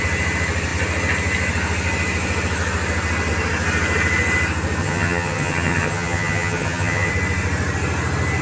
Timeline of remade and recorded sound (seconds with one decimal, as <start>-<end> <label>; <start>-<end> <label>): 0.0-4.8 recorded; 4.8-7.1 remade; 7.1-8.4 recorded